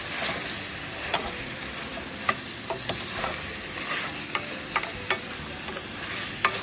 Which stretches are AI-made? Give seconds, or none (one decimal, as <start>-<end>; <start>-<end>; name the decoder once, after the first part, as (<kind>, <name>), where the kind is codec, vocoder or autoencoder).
none